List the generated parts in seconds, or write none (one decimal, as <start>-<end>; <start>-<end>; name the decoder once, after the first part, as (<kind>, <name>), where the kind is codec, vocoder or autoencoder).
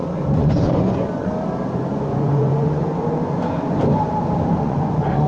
0.0-1.3 (vocoder, Vocos); 1.9-2.8; 4.6-5.3